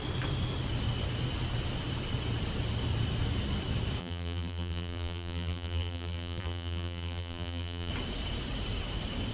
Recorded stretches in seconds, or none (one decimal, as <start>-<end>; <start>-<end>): 0.0-4.0; 7.9-9.3